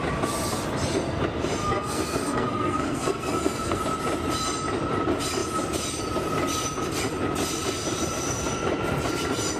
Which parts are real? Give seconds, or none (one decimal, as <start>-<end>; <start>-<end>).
0.0-1.6; 3.8-9.6